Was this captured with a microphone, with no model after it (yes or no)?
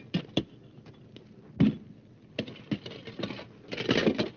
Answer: yes